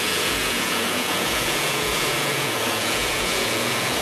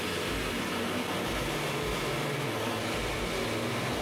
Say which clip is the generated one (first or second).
first